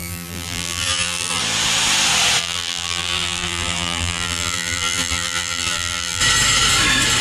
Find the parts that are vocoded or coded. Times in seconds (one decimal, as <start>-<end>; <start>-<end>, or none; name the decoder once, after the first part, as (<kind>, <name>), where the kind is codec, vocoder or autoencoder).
0.0-1.4 (vocoder, BigVGAN v2); 2.4-6.2